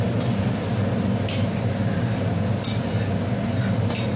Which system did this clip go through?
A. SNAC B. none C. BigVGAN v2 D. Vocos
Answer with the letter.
B